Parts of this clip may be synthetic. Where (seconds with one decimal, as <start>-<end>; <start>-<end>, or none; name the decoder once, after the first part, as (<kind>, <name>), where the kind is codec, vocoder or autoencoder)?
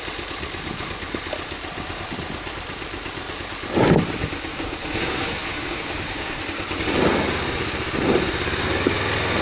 4.5-6.4 (codec, DAC)